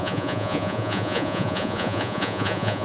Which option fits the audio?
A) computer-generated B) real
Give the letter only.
A